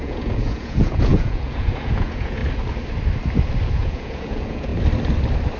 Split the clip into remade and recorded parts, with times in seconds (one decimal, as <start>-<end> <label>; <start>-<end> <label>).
0.0-2.4 remade; 2.4-3.7 recorded; 3.7-4.7 remade; 4.7-5.6 recorded